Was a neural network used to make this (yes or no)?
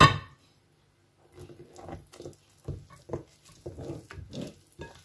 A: no